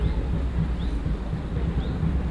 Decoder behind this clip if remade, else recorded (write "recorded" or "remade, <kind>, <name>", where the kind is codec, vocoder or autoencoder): recorded